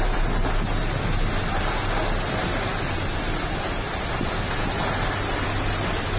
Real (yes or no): yes